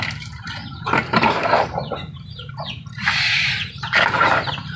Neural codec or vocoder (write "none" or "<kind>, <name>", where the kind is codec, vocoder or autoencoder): vocoder, BigVGAN v2